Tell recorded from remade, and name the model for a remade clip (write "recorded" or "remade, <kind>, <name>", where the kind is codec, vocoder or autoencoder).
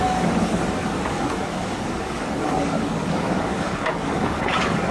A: remade, codec, DAC